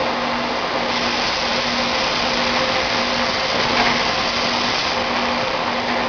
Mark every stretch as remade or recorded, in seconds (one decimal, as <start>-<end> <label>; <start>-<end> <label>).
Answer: 0.0-6.1 recorded